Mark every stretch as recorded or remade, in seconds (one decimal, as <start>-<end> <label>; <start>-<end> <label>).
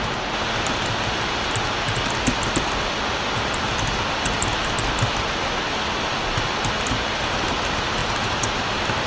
0.0-9.1 recorded